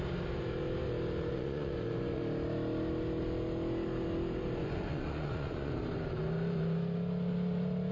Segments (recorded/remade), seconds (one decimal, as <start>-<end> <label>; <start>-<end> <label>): 0.0-1.3 recorded; 1.3-2.2 remade; 2.2-4.6 recorded; 4.6-5.7 remade; 5.7-7.9 recorded